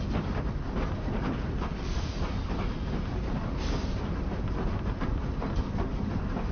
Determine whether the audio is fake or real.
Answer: real